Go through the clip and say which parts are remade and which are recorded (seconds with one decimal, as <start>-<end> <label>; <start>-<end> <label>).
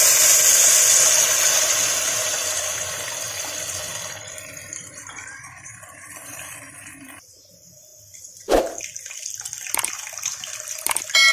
0.0-2.3 recorded; 2.3-7.5 remade; 7.5-7.9 recorded; 7.9-8.6 remade; 8.6-11.3 recorded